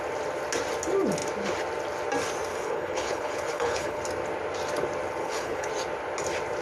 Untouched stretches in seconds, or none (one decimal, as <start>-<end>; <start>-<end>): 0.0-2.5; 4.0-5.2; 5.7-6.6